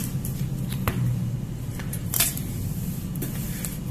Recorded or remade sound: recorded